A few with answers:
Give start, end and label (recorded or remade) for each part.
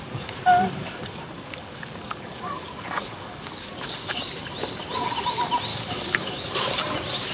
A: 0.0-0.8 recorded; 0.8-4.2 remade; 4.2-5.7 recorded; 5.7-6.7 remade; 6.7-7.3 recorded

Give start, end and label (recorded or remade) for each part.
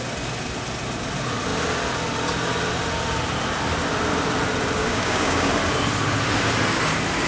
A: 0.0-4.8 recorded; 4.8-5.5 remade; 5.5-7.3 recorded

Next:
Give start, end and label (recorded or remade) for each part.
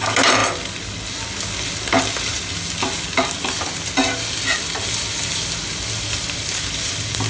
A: 0.0-7.3 recorded